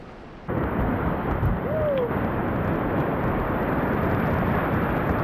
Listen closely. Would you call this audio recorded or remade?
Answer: recorded